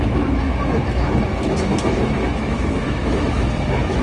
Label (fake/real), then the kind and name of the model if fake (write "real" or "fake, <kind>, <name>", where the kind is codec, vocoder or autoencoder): fake, autoencoder, DAC-VAE